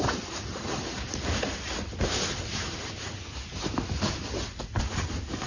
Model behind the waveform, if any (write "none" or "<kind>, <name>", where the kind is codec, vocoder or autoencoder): none